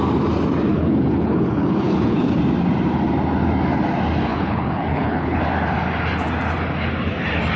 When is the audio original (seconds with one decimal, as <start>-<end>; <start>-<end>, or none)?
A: 0.0-0.7; 2.4-4.3; 5.4-7.6